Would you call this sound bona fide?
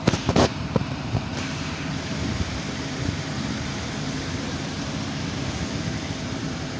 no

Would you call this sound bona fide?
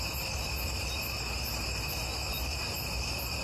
yes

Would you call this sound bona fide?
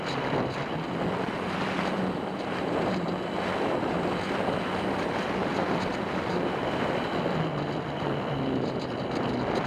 no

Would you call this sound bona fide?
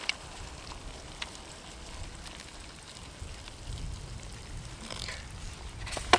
no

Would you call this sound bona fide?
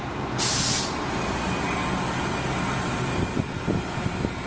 yes